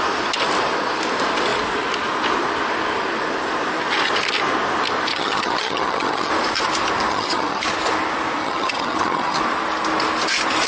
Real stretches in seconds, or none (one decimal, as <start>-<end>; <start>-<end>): 0.0-5.1; 6.3-7.1; 7.6-8.4; 9.4-10.7